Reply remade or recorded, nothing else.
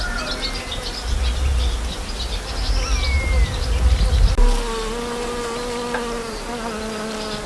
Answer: recorded